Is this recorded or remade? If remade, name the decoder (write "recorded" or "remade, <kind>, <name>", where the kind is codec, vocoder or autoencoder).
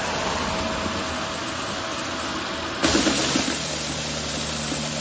recorded